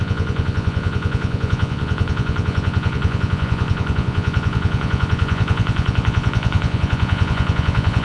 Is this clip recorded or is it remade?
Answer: remade